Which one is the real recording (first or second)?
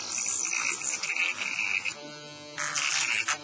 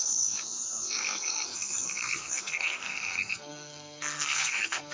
first